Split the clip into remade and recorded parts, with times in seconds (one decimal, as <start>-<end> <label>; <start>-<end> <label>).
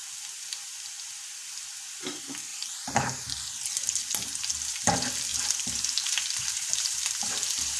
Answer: 0.0-2.5 recorded; 2.5-3.2 remade; 3.2-5.3 recorded; 5.3-7.8 remade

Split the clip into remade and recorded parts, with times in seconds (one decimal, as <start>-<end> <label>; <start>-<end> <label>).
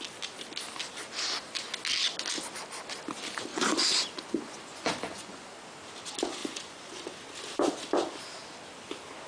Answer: 0.0-3.5 recorded; 3.5-5.5 remade; 5.5-6.4 recorded; 6.4-7.0 remade; 7.0-9.3 recorded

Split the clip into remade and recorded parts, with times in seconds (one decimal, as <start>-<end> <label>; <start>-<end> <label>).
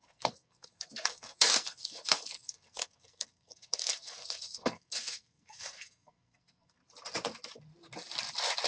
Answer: 0.0-6.8 remade; 6.8-8.7 recorded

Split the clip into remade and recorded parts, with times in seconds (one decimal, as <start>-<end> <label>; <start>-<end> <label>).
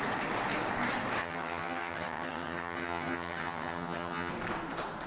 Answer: 0.0-1.2 recorded; 1.2-4.3 remade; 4.3-5.1 recorded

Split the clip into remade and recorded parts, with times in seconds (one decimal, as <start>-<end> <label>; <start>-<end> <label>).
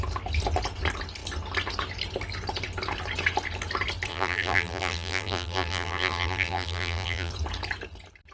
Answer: 0.0-4.1 recorded; 4.1-7.3 remade; 7.3-8.3 recorded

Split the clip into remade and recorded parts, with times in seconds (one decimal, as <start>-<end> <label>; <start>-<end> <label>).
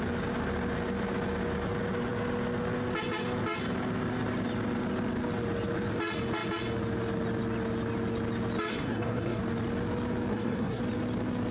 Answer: 0.0-8.7 recorded; 8.7-9.4 remade; 9.4-10.3 recorded; 10.3-10.8 remade; 10.8-11.5 recorded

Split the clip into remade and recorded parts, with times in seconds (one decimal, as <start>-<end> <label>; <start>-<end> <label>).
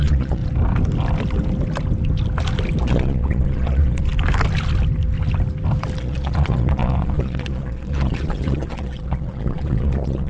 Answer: 0.0-0.4 remade; 0.4-2.8 recorded; 2.8-4.1 remade; 4.1-6.0 recorded; 6.0-10.3 remade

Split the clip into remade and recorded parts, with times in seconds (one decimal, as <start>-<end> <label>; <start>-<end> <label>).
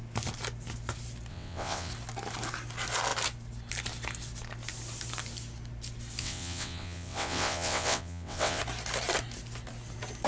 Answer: 0.0-1.3 recorded; 1.3-1.9 remade; 1.9-6.2 recorded; 6.2-8.6 remade; 8.6-10.3 recorded